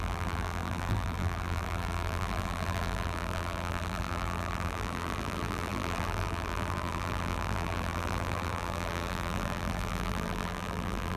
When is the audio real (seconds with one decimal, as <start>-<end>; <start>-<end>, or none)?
none